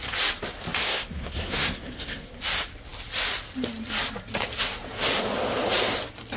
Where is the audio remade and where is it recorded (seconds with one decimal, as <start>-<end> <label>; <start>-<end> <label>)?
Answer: 0.0-0.8 recorded; 0.8-2.4 remade; 2.4-6.4 recorded

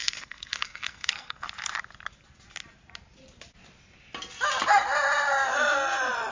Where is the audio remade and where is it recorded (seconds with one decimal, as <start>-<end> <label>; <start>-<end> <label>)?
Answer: 0.0-1.4 remade; 1.4-6.3 recorded